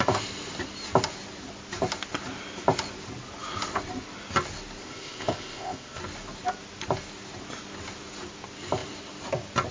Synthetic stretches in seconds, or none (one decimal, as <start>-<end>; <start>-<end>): 4.8-6.0